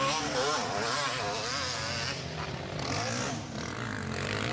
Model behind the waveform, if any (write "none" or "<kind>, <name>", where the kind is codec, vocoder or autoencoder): none